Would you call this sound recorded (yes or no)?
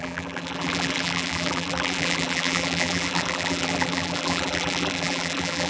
no